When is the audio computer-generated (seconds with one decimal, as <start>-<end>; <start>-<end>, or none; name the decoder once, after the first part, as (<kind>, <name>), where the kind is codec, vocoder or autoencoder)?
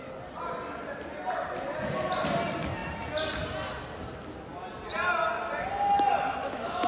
6.4-6.9 (autoencoder, DAC-VAE)